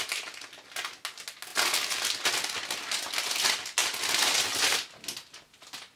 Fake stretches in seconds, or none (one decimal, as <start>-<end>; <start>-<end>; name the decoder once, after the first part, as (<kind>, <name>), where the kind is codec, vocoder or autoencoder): none